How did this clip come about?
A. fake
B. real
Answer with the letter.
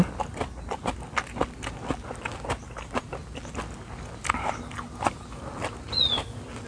B